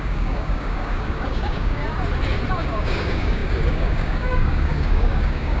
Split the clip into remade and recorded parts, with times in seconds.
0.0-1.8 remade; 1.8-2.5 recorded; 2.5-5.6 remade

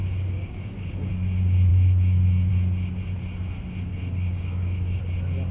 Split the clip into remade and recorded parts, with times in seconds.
0.0-1.1 remade; 1.1-3.9 recorded; 3.9-5.0 remade; 5.0-5.5 recorded

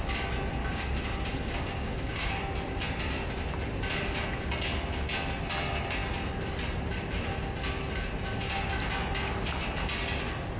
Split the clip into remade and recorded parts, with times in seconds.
0.0-0.6 recorded; 0.6-2.4 remade; 2.4-10.6 recorded

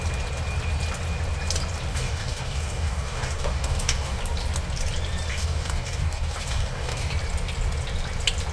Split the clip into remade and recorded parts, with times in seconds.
0.0-1.9 recorded; 1.9-4.2 remade; 4.2-5.3 recorded; 5.3-7.1 remade; 7.1-8.5 recorded

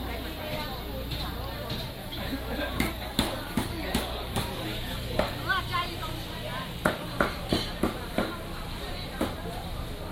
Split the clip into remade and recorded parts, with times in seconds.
0.0-2.0 recorded; 2.0-5.3 remade; 5.3-10.1 recorded

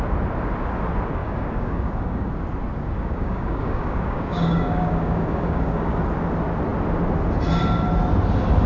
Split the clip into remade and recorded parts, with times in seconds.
0.0-1.2 recorded; 1.2-2.3 remade; 2.3-2.7 recorded; 2.7-6.0 remade; 6.0-8.7 recorded